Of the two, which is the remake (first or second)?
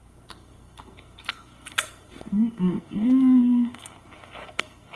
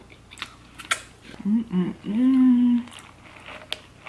first